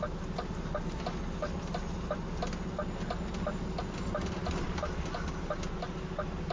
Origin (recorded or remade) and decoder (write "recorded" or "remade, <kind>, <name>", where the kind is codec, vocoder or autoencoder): recorded